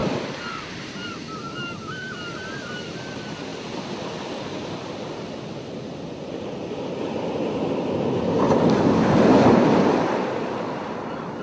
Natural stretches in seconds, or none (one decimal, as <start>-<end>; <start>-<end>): 3.5-8.1; 9.3-10.0